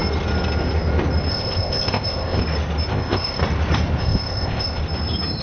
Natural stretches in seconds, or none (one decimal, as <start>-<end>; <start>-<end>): 0.0-1.3; 2.4-2.9; 3.4-4.0; 4.8-5.4